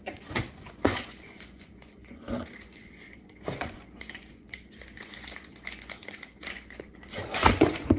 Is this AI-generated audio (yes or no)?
yes